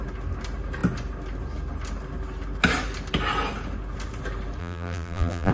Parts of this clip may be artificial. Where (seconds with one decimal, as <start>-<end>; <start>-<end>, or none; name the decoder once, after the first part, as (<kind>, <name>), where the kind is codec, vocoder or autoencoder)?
4.6-5.5 (vocoder, BigVGAN v2)